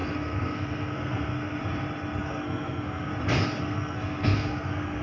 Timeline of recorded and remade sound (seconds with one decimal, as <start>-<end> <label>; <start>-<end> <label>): 0.0-1.6 remade; 1.6-2.2 recorded; 2.2-3.1 remade; 3.1-3.6 recorded; 3.6-5.0 remade